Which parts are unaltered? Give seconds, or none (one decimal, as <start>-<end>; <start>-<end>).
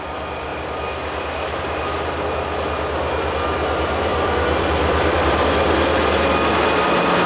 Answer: 0.0-4.1; 5.3-7.3